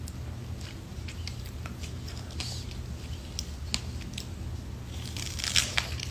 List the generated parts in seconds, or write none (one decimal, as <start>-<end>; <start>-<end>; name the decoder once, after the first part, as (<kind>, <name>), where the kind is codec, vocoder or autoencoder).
0.9-1.8 (vocoder, BigVGAN v2)